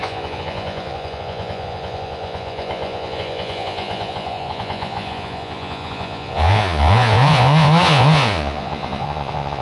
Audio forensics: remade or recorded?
remade